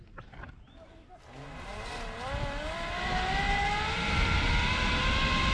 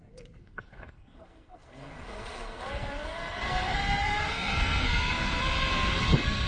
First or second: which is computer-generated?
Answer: second